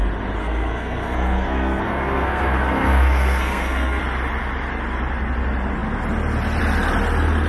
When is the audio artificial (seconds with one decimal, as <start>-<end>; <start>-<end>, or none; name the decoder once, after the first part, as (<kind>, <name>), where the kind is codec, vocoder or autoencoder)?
0.4-4.0 (codec, SNAC)